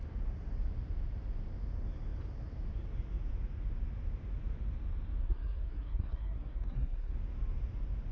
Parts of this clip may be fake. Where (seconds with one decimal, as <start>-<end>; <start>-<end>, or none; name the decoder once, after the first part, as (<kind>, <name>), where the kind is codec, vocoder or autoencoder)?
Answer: 5.2-7.1 (codec, SNAC)